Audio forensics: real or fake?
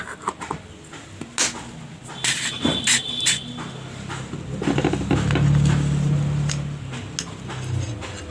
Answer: real